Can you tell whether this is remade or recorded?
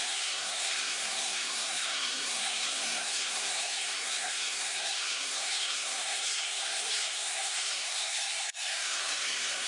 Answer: remade